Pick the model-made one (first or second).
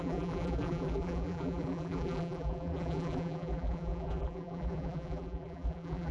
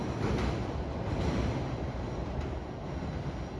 first